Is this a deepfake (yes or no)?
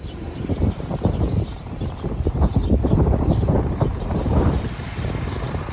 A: yes